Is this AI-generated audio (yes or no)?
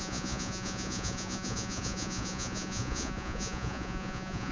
yes